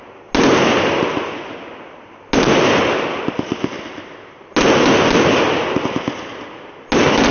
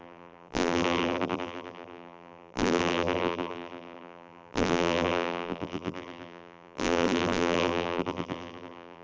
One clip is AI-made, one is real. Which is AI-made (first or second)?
second